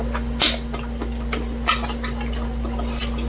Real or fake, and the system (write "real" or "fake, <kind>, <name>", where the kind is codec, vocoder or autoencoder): real